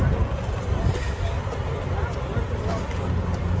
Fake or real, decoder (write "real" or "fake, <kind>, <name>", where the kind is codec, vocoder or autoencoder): real